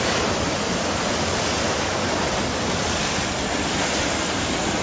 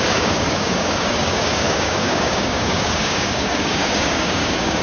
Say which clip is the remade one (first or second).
second